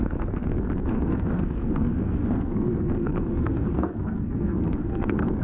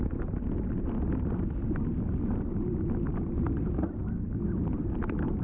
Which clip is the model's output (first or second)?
first